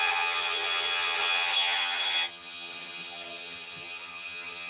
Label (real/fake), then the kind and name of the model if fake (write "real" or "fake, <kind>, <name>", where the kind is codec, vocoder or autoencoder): fake, vocoder, HiFi-GAN